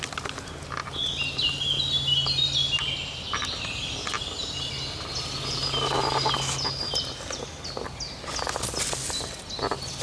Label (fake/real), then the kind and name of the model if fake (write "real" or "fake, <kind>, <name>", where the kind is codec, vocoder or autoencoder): real